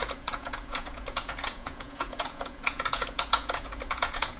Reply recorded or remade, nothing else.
remade